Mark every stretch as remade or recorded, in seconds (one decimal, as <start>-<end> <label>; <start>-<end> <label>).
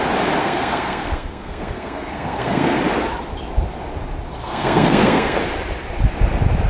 0.0-0.4 recorded; 0.4-2.8 remade; 2.8-4.4 recorded; 4.4-5.4 remade; 5.4-6.7 recorded